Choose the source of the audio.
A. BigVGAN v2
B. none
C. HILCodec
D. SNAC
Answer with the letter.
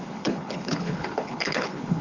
C